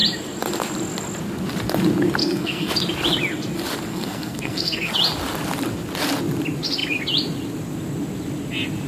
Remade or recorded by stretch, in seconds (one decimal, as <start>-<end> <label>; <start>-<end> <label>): 0.0-2.2 recorded; 2.2-2.7 remade; 2.7-3.9 recorded; 3.9-4.9 remade; 4.9-8.9 recorded